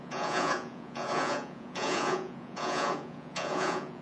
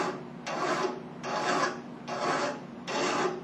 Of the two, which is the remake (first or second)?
first